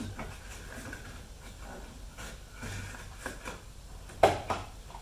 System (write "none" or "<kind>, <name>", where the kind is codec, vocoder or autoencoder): none